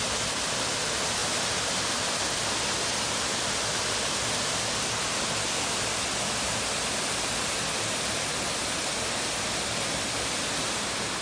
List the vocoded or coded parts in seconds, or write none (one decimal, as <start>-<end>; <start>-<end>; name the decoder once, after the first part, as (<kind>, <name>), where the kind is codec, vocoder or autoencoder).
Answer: none